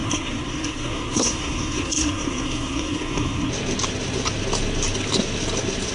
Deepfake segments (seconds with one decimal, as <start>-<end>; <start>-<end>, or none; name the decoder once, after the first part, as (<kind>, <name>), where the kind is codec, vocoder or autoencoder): 0.0-3.5 (codec, SNAC)